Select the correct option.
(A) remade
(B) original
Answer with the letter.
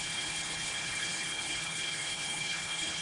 A